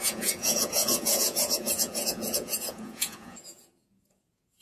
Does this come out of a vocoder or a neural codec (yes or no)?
yes